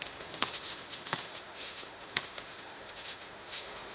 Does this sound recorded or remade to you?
remade